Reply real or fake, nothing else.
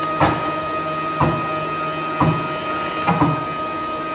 real